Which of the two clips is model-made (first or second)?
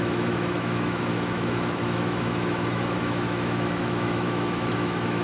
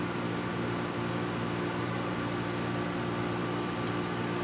first